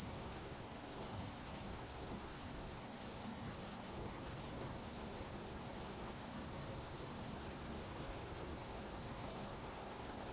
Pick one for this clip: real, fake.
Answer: fake